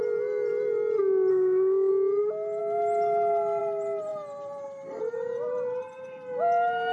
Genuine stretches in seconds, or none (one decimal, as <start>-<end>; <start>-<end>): 0.0-1.3; 1.9-6.9